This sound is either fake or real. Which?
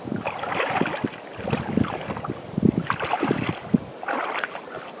real